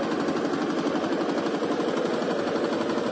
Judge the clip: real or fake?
real